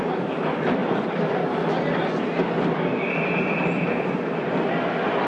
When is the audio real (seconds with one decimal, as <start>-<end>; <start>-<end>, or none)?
2.9-4.0